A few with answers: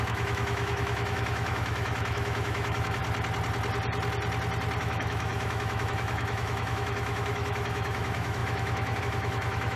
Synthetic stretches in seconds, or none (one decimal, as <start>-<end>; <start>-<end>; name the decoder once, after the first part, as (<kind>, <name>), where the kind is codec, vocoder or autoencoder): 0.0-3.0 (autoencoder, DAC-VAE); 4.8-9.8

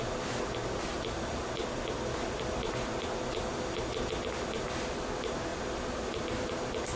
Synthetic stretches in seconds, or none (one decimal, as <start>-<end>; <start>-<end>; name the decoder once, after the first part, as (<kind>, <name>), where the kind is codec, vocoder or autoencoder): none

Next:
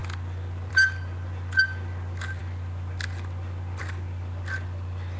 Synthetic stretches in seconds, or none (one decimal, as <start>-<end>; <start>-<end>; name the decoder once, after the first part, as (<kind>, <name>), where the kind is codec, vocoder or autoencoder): none

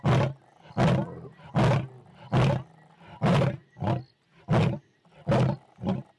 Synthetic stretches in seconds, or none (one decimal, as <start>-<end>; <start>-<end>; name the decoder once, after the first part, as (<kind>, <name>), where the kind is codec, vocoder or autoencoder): none

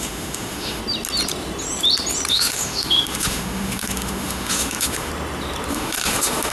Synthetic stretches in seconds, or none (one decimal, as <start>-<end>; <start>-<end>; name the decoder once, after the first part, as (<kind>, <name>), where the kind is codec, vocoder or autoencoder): 0.0-0.8 (autoencoder, DAC-VAE); 2.3-5.1; 5.7-6.5

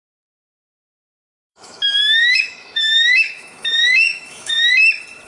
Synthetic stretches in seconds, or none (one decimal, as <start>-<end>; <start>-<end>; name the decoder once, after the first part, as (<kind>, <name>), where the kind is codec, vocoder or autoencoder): 1.5-4.7 (autoencoder, DAC-VAE)

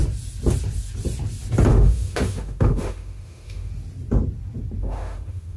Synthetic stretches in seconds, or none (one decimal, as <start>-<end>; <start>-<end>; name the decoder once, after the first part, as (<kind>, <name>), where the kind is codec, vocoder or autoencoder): 1.7-3.7 (autoencoder, DAC-VAE); 4.8-5.6

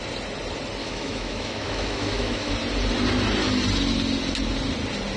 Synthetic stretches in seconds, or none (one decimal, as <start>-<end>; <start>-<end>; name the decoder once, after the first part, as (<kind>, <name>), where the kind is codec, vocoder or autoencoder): 0.8-2.5 (autoencoder, DAC-VAE)